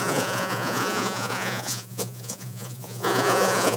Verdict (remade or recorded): remade